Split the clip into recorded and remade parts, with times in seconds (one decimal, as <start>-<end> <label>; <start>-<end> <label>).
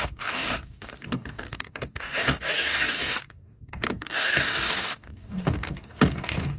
0.0-6.6 remade